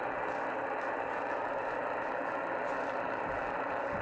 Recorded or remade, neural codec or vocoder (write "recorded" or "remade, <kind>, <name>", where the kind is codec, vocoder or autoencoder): recorded